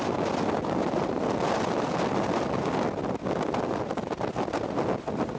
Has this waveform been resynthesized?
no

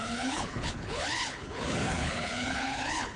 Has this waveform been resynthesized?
yes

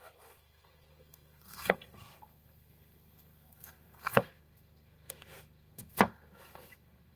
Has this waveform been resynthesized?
yes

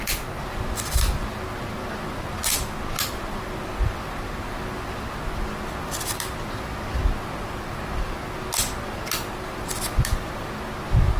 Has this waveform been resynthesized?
no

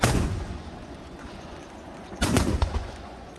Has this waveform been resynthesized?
yes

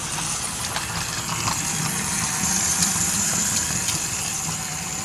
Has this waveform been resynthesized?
yes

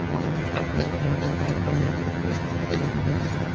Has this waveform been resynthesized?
yes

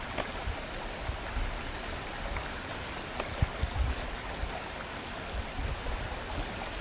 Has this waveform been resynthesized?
no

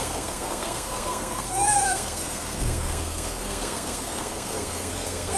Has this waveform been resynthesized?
yes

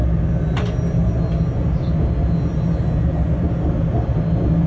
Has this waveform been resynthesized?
no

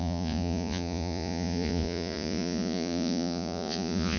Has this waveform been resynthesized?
yes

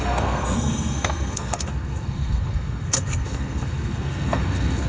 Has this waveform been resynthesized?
yes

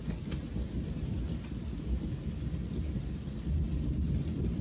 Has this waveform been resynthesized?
no